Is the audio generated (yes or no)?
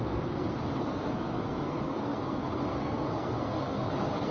yes